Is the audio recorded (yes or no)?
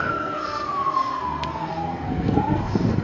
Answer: no